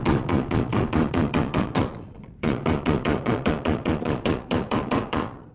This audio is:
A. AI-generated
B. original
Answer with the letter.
A